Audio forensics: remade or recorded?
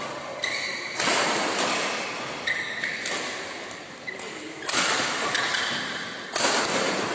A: recorded